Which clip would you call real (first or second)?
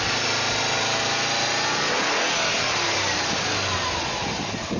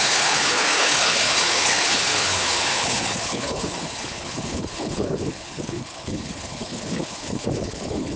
first